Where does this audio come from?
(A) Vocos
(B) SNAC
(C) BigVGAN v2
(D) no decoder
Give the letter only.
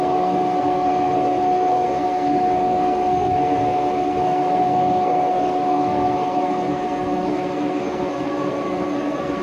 B